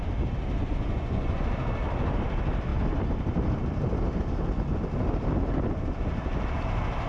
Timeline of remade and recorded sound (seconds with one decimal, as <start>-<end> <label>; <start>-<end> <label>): 0.0-0.6 recorded; 0.6-1.4 remade; 1.4-7.1 recorded